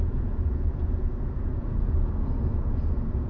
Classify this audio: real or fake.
fake